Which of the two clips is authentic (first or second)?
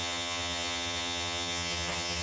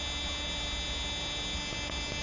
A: second